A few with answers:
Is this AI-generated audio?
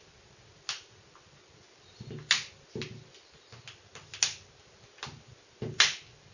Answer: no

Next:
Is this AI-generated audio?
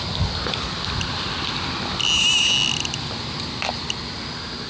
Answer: no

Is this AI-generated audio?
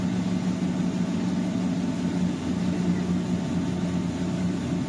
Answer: no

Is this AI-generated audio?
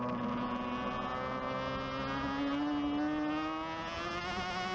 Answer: no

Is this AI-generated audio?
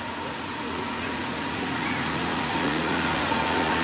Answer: yes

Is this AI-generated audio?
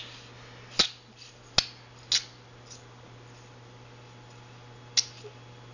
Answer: no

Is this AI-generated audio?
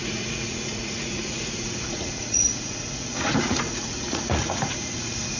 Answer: yes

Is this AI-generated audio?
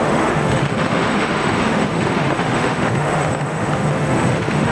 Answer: yes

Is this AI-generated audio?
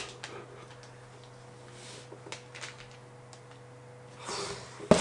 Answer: no